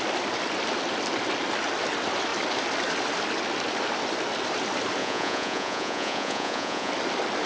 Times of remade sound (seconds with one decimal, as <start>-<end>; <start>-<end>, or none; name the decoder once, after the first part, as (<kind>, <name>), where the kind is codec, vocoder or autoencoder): 5.0-6.9 (vocoder, Vocos)